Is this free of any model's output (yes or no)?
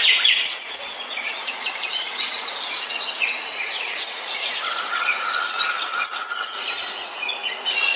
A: no